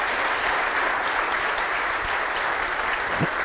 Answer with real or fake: real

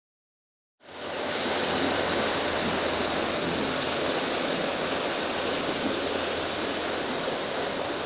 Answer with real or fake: real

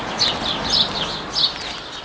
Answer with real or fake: real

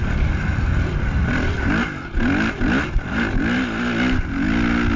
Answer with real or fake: real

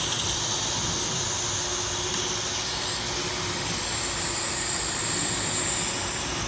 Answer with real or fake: real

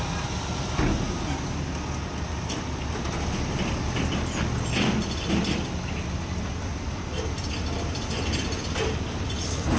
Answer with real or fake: real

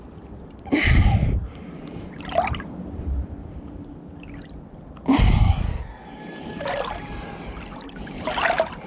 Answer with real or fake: real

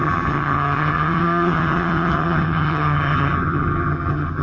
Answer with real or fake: fake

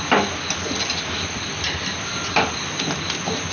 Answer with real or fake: real